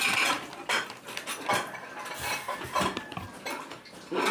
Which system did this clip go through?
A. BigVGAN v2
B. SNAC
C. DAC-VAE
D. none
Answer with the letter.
D